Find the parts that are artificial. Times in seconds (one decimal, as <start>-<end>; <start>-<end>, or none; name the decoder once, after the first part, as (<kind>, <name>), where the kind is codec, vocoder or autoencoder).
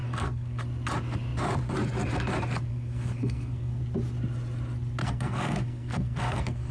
0.0-0.6 (codec, SNAC); 2.7-3.8; 5.0-6.7